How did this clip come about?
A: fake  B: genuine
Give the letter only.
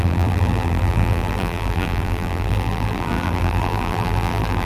A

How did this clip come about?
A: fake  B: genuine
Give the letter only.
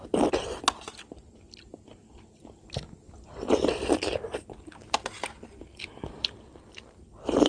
B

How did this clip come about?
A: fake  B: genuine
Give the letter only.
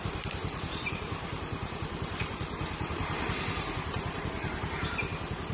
A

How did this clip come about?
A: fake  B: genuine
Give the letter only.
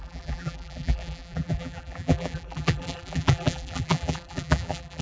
A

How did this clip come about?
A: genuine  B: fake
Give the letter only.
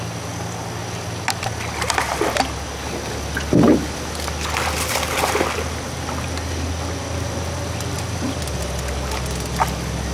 A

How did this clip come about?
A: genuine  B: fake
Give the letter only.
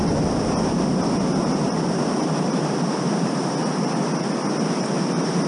A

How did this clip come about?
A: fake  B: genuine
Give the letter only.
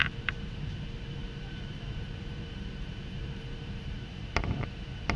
A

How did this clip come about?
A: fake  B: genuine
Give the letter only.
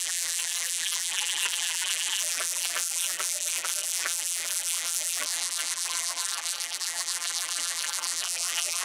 A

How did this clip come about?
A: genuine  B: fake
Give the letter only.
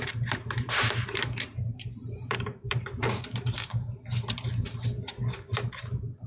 B